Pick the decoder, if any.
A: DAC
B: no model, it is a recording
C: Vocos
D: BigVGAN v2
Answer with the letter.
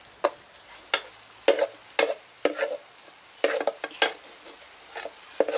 B